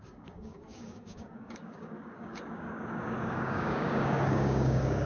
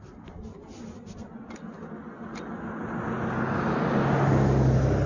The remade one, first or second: first